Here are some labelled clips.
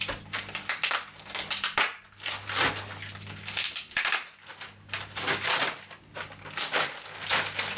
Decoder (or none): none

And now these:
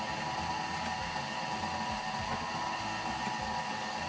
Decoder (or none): none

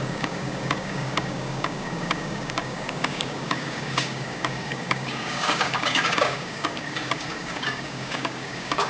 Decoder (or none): codec, DAC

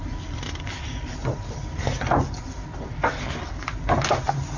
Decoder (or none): none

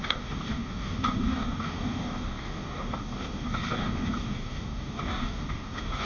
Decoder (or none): codec, DAC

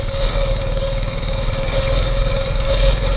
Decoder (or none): codec, DAC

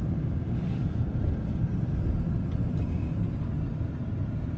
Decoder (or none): none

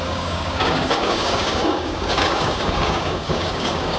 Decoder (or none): codec, DAC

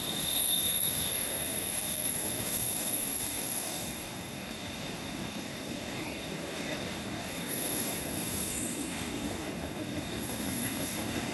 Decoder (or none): codec, DAC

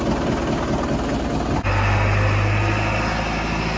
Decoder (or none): none